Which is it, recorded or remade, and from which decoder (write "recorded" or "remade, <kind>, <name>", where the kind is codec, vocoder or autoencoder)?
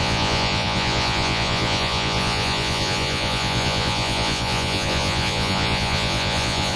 remade, vocoder, Vocos